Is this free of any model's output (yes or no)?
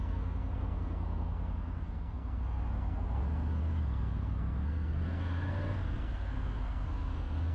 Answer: no